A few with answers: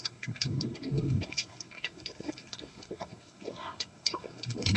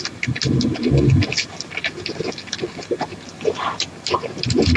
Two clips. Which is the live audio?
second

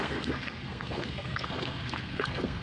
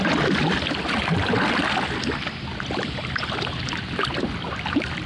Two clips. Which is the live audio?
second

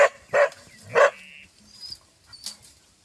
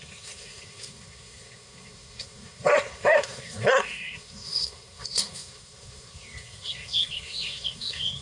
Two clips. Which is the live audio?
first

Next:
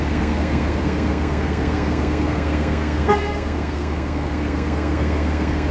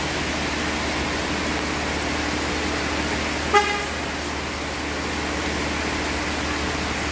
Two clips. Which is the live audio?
second